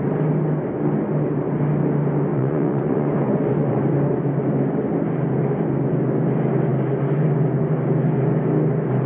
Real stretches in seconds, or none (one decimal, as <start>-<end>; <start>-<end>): 0.0-2.3; 3.8-9.1